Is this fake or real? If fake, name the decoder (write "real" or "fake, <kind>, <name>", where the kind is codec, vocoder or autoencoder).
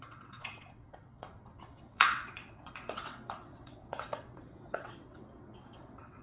fake, vocoder, WaveNeXt